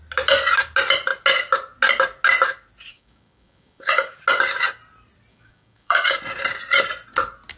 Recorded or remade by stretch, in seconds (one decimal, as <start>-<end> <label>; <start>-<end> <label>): 0.0-2.9 recorded; 2.9-4.2 remade; 4.2-5.3 recorded; 5.3-6.2 remade; 6.2-7.6 recorded